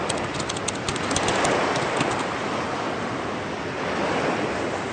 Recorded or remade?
recorded